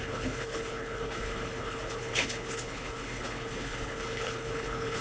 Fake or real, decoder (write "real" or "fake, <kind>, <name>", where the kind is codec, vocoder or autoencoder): fake, codec, HILCodec